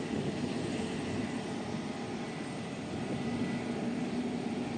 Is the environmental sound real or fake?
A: real